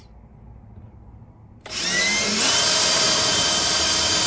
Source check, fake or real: fake